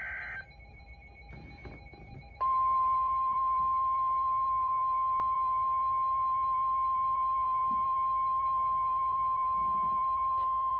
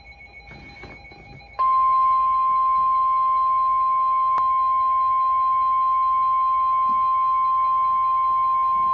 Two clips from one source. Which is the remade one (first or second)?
first